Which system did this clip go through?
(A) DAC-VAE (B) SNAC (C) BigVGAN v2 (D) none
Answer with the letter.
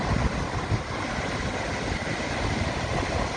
D